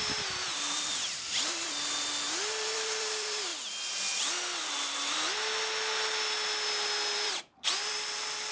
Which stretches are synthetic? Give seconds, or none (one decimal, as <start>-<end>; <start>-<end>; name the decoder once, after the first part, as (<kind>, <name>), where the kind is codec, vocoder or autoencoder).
0.0-3.5 (vocoder, BigVGAN v2); 7.1-8.5